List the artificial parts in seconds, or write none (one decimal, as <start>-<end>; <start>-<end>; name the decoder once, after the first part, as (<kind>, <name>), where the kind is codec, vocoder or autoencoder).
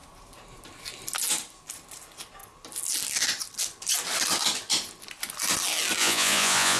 6.0-6.8 (vocoder, Vocos)